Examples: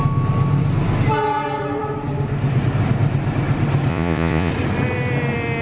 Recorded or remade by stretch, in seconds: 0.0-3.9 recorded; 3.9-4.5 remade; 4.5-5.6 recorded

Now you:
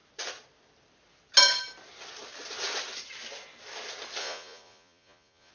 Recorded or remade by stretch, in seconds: 0.0-4.2 recorded; 4.2-5.5 remade

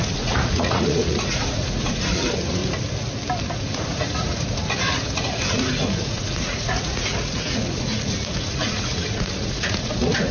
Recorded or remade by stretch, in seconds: 0.0-2.6 remade; 2.6-3.6 recorded; 3.6-10.3 remade

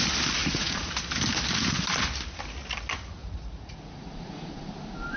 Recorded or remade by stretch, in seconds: 0.0-0.4 recorded; 0.4-0.9 remade; 0.9-3.2 recorded; 3.2-4.7 remade; 4.7-5.2 recorded

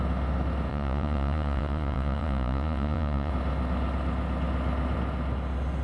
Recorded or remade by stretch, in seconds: 0.0-0.7 recorded; 0.7-3.3 remade; 3.3-5.8 recorded